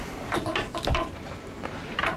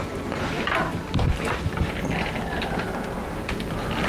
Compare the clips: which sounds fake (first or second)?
first